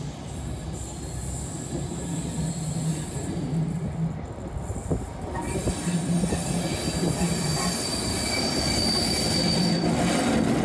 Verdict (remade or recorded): recorded